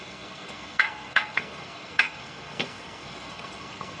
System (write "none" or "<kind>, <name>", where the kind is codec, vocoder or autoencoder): codec, SNAC